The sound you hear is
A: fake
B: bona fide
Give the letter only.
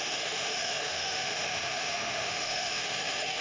A